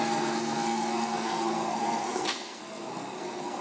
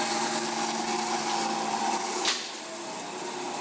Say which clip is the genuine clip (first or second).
second